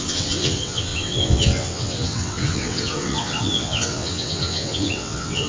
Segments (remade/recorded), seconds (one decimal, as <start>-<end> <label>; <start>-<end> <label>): 0.0-5.5 remade